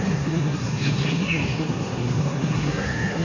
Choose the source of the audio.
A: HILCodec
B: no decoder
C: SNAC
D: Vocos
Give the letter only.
C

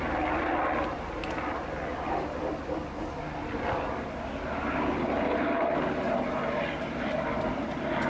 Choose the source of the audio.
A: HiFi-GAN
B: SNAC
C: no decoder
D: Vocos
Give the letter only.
C